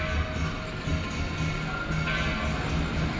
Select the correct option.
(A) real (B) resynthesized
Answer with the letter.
A